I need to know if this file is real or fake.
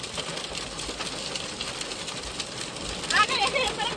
real